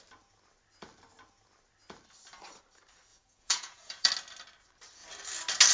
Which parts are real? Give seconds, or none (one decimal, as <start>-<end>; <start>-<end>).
0.0-3.1; 4.1-5.7